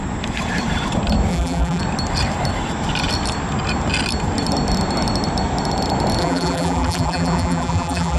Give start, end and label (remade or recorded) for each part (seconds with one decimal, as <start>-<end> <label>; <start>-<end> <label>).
0.0-1.3 recorded; 1.3-1.8 remade; 1.8-6.2 recorded; 6.2-8.2 remade